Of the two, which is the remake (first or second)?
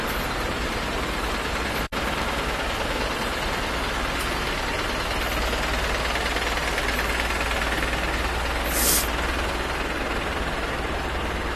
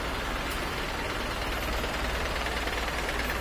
second